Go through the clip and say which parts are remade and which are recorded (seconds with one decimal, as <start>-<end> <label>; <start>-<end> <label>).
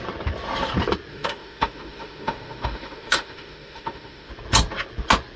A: 0.0-1.1 recorded; 1.1-4.3 remade; 4.3-5.4 recorded